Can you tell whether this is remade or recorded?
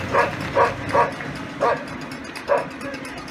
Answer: recorded